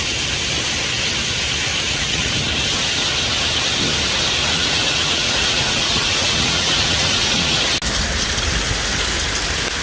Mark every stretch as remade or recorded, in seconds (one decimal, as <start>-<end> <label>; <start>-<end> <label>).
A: 0.0-1.7 recorded; 1.7-2.3 remade; 2.3-4.4 recorded; 4.4-7.6 remade; 7.6-9.8 recorded